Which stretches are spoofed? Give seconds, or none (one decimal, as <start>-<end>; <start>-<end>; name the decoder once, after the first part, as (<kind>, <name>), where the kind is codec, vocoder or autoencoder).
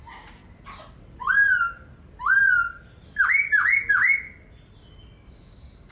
none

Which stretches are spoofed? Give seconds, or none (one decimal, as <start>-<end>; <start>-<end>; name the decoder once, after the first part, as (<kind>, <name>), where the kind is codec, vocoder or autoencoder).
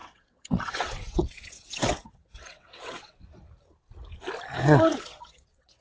0.0-3.1 (vocoder, WaveNeXt); 4.9-5.8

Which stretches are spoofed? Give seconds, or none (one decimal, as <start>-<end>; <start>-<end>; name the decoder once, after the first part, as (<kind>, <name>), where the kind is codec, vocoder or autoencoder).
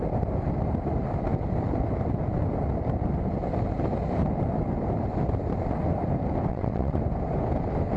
6.5-7.0 (vocoder, WaveNeXt)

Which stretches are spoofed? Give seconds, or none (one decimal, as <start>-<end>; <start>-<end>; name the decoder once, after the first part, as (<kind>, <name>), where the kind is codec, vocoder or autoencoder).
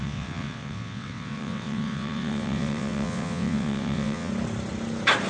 0.0-4.3 (vocoder, WaveNeXt)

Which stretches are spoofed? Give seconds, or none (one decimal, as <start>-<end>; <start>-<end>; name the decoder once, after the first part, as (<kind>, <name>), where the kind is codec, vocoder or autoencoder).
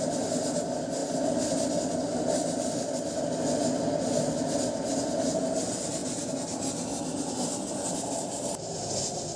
none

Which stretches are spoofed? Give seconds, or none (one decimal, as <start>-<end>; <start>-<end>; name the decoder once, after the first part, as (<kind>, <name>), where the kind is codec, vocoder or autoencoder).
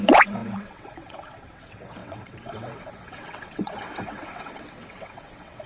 0.0-5.7 (vocoder, WaveNeXt)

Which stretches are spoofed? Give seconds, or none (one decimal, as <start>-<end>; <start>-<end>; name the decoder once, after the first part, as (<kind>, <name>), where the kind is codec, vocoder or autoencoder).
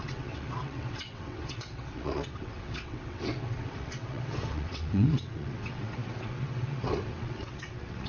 0.0-8.1 (vocoder, WaveNeXt)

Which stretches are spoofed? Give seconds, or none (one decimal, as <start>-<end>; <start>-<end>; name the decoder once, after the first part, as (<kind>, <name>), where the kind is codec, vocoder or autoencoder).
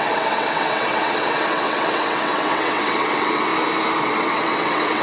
0.0-3.5 (vocoder, WaveNeXt); 4.0-5.0